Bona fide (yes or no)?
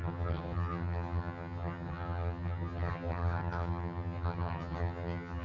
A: no